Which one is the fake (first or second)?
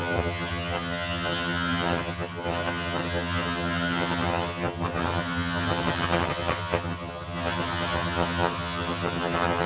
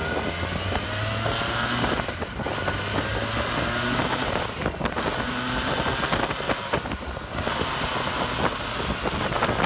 first